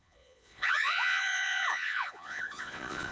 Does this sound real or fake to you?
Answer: fake